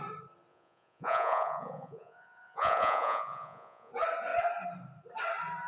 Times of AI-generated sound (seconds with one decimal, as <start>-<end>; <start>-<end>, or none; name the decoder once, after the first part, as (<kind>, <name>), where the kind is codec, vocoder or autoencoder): 0.5-3.9 (vocoder, Vocos)